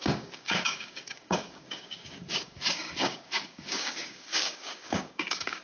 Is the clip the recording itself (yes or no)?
no